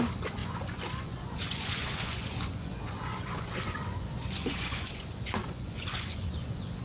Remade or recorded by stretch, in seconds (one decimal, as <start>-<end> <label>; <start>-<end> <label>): 0.0-6.8 remade